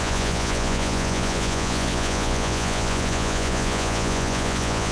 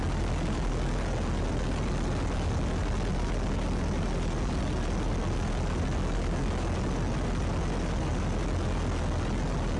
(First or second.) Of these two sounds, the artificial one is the first